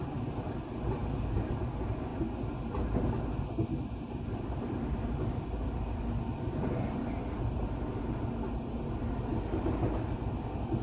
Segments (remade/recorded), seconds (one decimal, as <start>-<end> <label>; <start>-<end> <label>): 0.0-10.8 recorded